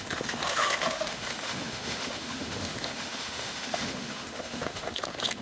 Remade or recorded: remade